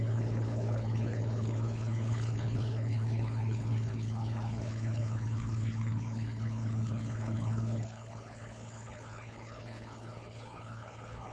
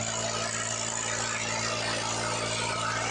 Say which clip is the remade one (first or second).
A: first